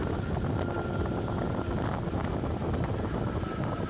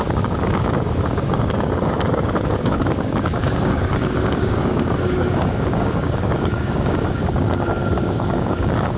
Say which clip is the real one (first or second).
first